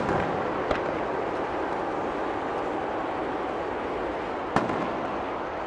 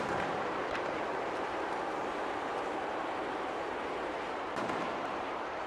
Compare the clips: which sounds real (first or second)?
first